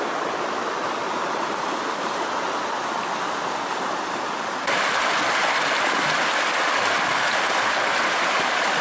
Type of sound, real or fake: real